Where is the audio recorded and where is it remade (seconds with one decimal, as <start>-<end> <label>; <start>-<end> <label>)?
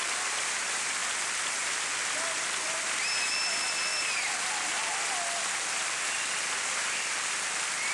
0.0-7.9 recorded